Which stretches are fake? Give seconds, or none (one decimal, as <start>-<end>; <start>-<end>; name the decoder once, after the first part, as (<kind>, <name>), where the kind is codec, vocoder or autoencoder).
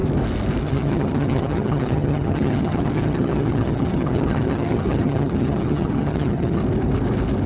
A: 0.6-6.6 (vocoder, HiFi-GAN)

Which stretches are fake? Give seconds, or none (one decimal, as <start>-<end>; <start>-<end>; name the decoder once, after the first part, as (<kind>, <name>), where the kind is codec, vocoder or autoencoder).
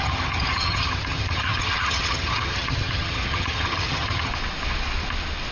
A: 0.0-4.3 (vocoder, HiFi-GAN)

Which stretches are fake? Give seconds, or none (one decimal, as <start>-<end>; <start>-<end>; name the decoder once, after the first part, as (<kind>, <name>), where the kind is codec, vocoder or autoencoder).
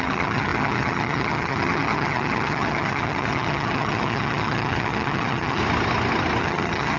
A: 0.0-5.6 (vocoder, HiFi-GAN); 6.4-7.0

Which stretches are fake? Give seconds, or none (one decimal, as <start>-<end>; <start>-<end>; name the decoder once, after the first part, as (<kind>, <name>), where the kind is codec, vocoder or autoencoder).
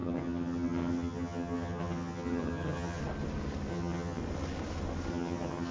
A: 0.0-3.0 (vocoder, HiFi-GAN); 3.7-4.2; 5.1-5.7